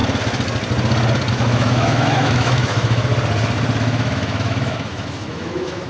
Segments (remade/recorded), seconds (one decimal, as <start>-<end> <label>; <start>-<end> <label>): 0.0-1.3 recorded; 1.3-3.1 remade; 3.1-3.8 recorded; 3.8-5.9 remade